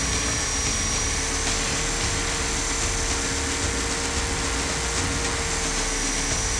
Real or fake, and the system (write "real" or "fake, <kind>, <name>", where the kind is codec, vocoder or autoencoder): real